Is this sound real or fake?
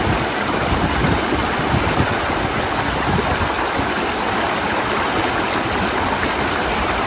real